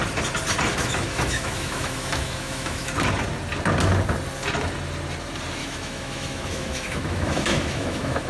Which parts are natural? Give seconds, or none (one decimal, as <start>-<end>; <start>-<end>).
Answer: 0.0-0.7; 2.9-5.6